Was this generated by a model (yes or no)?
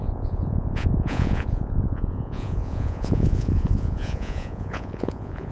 yes